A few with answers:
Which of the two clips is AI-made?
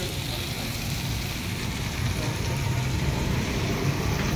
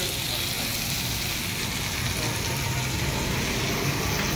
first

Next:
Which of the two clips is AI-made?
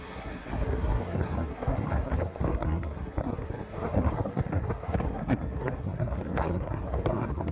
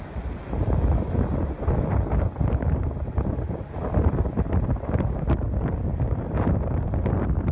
first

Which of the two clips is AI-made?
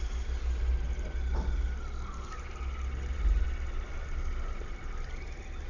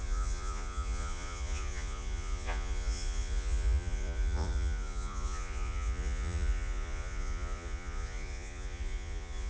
second